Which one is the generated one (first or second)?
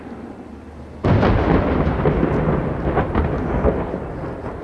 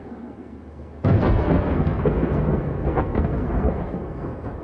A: second